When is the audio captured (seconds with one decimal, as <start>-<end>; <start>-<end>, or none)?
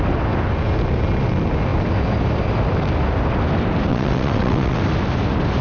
0.0-3.9; 4.8-5.6